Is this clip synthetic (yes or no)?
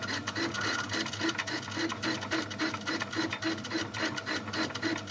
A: no